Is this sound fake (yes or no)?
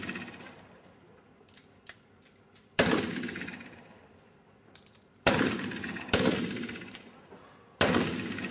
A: yes